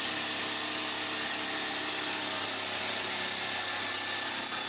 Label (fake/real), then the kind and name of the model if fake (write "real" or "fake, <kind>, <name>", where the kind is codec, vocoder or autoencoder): real